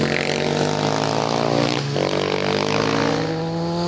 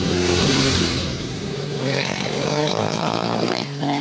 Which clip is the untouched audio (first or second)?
first